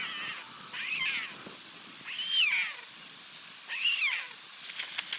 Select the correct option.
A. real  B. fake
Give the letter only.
A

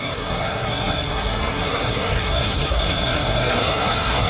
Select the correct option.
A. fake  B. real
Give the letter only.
A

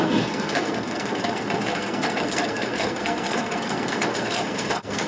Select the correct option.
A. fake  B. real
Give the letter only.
A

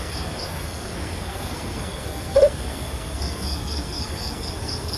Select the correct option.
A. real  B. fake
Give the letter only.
B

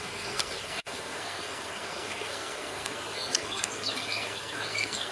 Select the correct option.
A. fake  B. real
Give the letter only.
A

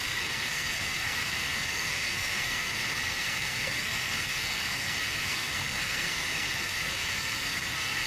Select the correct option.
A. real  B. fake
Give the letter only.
B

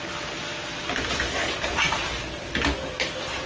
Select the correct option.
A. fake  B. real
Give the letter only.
B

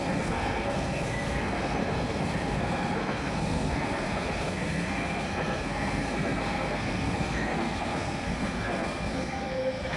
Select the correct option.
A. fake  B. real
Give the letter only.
A